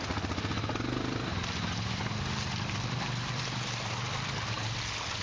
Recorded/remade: recorded